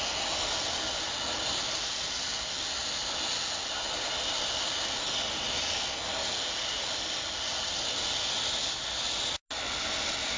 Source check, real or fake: real